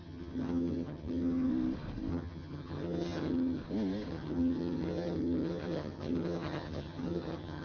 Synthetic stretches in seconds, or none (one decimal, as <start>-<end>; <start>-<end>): 0.0-1.5; 2.1-3.6; 4.1-7.6